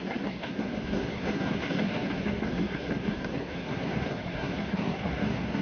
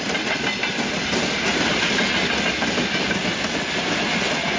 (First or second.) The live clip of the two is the second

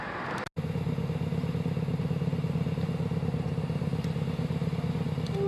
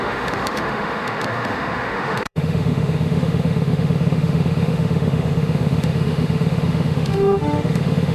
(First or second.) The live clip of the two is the first